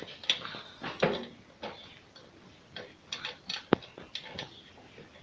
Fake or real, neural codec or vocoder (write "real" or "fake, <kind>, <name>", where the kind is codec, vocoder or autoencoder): real